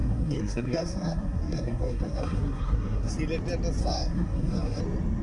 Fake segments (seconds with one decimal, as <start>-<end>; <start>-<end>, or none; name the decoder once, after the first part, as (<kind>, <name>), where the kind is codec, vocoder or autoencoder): 0.0-3.1 (codec, SNAC); 3.8-4.8